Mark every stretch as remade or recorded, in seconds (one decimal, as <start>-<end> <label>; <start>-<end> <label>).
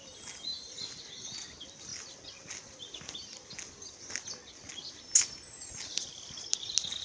0.0-7.0 recorded